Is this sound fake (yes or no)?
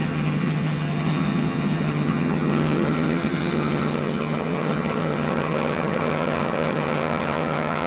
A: yes